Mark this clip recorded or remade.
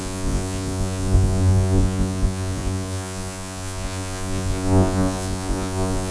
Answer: remade